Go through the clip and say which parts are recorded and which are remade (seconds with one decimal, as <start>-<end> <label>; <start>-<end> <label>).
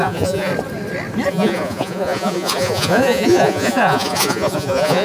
0.0-0.5 remade; 0.5-1.3 recorded; 1.3-5.0 remade